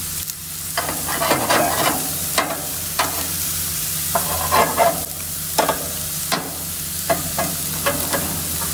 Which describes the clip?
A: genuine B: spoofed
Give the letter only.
A